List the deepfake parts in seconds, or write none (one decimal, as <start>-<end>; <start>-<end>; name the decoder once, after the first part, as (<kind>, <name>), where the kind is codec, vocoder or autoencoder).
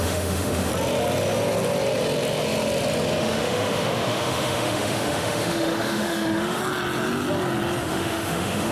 0.0-0.7 (autoencoder, DAC-VAE); 3.2-6.6; 7.8-8.7